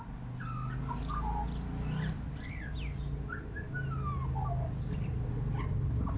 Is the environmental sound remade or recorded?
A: recorded